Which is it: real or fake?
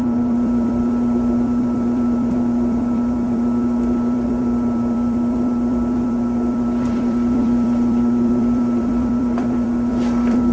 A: fake